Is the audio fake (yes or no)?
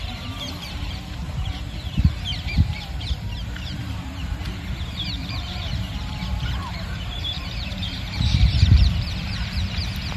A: yes